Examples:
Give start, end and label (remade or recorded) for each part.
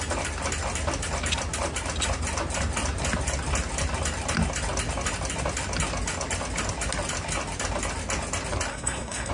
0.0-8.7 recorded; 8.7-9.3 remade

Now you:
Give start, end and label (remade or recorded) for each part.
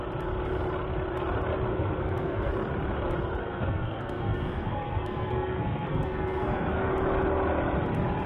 0.0-1.7 recorded; 1.7-2.5 remade; 2.5-3.4 recorded; 3.4-6.9 remade; 6.9-8.3 recorded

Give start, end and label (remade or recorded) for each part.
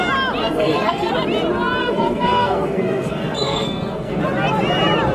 0.0-0.4 recorded; 0.4-1.1 remade; 1.1-1.8 recorded; 1.8-4.2 remade; 4.2-5.1 recorded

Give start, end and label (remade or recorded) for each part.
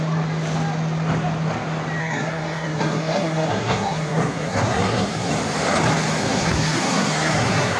0.0-2.0 recorded; 2.0-5.3 remade; 5.3-6.2 recorded; 6.2-7.8 remade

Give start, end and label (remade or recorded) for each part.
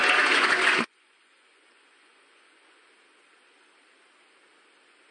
0.0-2.9 remade; 2.9-5.1 recorded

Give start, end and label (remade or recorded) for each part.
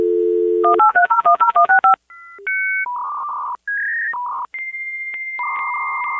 0.0-0.9 recorded; 0.9-1.7 remade; 1.7-6.2 recorded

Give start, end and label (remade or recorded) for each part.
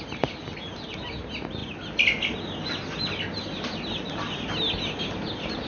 0.0-5.7 recorded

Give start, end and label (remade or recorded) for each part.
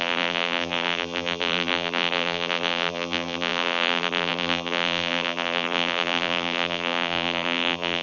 0.0-8.0 remade